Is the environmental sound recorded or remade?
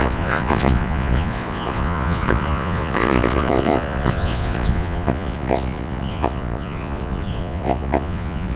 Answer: remade